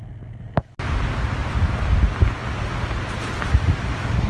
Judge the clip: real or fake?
real